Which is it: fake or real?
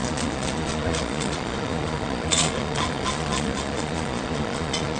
fake